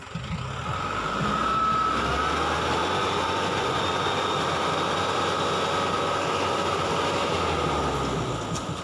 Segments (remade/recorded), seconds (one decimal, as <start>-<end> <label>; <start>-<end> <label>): 0.0-2.8 recorded; 2.8-4.4 remade; 4.4-8.8 recorded